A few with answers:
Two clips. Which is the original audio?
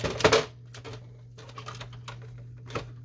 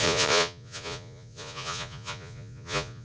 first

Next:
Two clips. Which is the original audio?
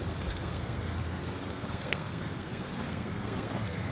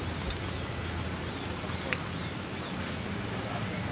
second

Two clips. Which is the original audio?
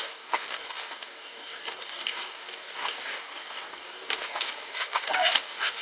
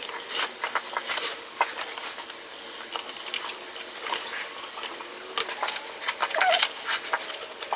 second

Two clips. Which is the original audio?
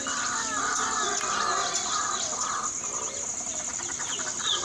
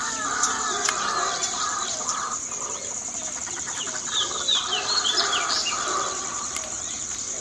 first